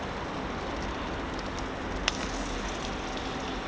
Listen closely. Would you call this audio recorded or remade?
recorded